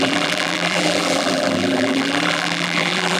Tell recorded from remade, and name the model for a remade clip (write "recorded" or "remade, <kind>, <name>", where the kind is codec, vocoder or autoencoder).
remade, vocoder, BigVGAN v2